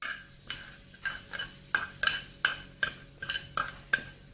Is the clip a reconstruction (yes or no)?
no